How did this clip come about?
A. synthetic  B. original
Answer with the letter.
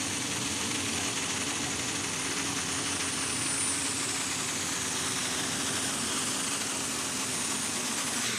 B